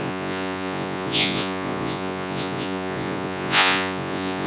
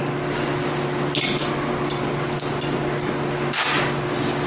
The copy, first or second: first